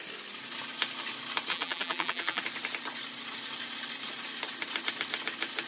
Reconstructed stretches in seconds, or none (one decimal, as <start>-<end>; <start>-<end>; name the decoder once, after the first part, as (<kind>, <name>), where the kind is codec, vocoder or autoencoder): 1.5-2.4 (vocoder, BigVGAN v2)